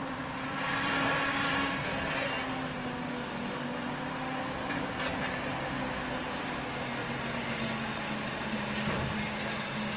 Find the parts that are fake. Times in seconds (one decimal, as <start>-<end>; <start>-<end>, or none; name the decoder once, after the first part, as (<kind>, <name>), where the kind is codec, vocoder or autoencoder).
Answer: 0.0-1.5 (vocoder, BigVGAN v2); 7.0-7.7